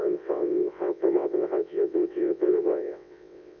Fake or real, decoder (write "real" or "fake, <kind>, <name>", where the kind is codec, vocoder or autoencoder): fake, vocoder, WaveNeXt